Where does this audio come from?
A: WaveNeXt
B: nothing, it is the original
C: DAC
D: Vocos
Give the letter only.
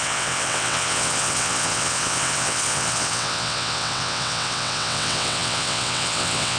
A